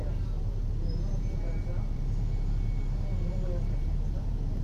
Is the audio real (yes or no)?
no